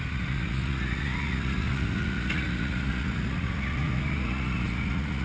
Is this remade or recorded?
remade